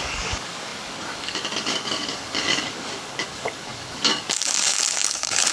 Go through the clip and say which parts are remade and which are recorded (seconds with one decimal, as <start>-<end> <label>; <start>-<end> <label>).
0.0-5.5 remade